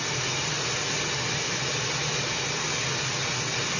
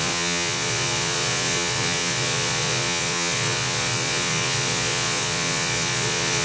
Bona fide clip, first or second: first